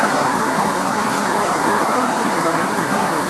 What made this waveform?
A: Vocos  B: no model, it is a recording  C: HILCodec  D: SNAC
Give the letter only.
D